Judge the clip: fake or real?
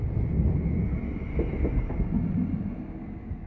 real